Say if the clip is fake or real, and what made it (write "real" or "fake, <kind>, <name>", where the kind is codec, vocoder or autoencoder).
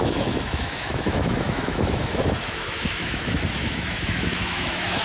fake, autoencoder, DAC-VAE